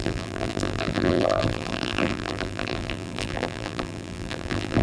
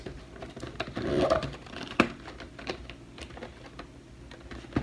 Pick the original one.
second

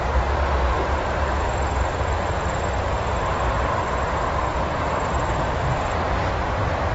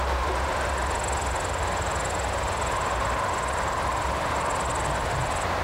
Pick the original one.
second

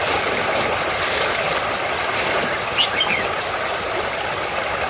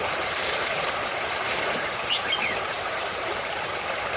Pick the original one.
first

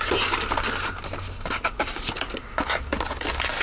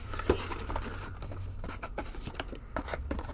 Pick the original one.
first